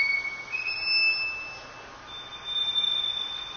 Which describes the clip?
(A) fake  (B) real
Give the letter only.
B